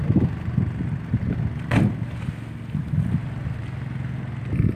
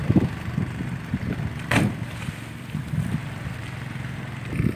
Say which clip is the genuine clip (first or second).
first